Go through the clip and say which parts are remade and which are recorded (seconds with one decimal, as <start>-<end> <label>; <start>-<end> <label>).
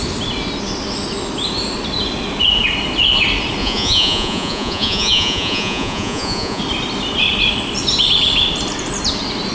0.0-3.6 recorded; 3.6-6.6 remade; 6.6-9.5 recorded